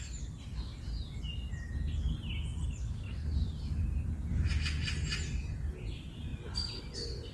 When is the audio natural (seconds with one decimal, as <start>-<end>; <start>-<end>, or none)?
0.0-2.5; 3.8-6.3; 6.8-7.3